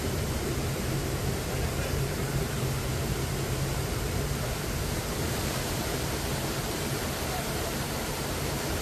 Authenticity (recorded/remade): remade